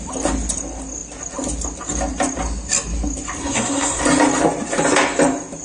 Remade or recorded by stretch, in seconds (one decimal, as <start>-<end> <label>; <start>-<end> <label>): 0.0-3.4 recorded; 3.4-4.0 remade; 4.0-5.6 recorded